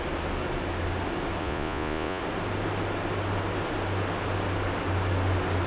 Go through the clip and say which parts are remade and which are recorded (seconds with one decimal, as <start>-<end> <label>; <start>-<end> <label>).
0.0-1.4 recorded; 1.4-2.2 remade; 2.2-5.7 recorded